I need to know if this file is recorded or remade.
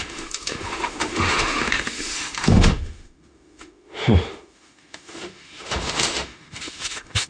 remade